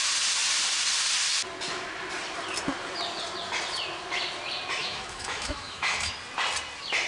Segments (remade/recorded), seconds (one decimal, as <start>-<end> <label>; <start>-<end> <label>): 0.0-4.8 recorded; 4.8-6.1 remade; 6.1-7.1 recorded